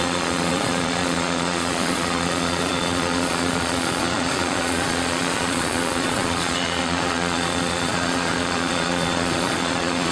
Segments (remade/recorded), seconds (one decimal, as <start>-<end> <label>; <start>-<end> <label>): 0.0-10.1 remade